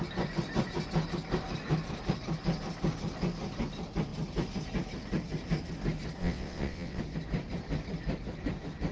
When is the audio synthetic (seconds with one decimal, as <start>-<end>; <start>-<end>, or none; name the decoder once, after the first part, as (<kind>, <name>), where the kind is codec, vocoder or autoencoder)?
6.2-7.0 (vocoder, WaveNeXt)